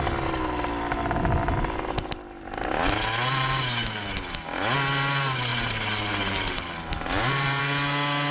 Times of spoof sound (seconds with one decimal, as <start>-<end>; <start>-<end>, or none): 5.5-7.6